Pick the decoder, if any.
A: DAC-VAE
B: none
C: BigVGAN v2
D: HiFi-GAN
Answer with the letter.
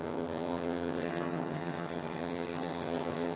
D